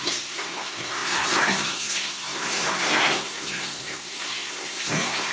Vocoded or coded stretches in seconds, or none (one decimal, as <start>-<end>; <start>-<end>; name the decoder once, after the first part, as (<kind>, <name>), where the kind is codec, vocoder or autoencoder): 0.0-5.3 (codec, SNAC)